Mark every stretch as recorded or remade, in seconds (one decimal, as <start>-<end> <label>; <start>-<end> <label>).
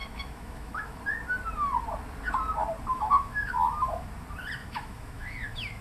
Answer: 0.0-1.0 remade; 1.0-2.9 recorded; 2.9-4.1 remade; 4.1-4.6 recorded; 4.6-5.8 remade